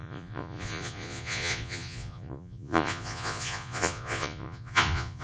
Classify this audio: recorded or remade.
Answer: remade